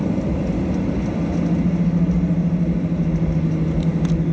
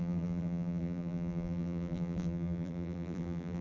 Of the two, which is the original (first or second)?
first